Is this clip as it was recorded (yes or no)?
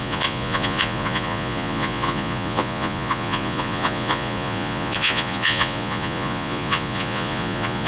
no